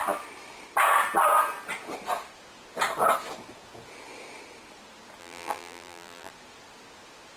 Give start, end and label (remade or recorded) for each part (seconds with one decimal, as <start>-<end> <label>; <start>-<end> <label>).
0.0-5.2 recorded; 5.2-6.3 remade; 6.3-7.4 recorded